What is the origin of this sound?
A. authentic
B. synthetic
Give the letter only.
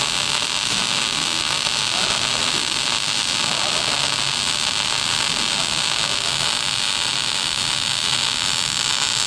A